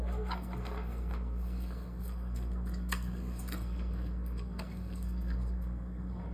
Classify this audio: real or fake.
fake